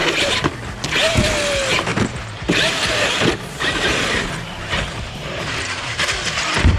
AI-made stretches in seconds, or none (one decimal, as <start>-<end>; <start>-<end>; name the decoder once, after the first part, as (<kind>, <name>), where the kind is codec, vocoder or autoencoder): 1.9-6.0 (vocoder, BigVGAN v2)